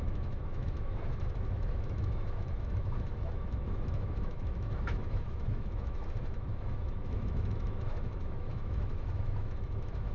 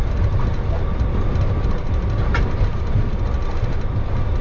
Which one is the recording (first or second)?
second